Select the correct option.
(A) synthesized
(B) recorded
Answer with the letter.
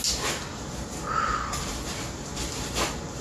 B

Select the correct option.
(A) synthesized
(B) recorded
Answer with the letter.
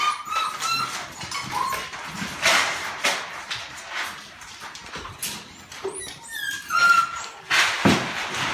B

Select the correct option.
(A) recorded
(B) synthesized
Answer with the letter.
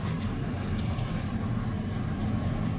A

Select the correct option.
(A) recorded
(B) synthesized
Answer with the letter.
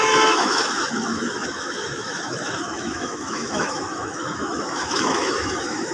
B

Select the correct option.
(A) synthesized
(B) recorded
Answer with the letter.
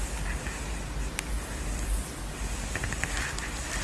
B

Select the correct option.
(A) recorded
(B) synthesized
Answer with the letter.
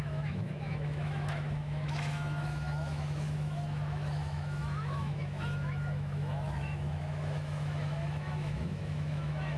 B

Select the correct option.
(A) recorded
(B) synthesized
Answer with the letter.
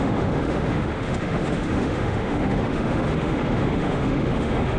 B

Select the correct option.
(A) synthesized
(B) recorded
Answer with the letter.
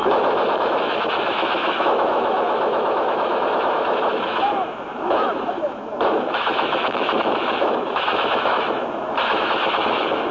A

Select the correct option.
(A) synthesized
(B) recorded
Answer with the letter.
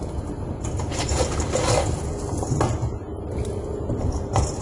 B